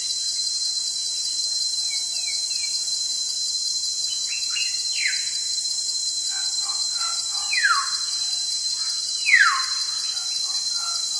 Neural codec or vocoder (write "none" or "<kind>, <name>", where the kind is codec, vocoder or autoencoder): none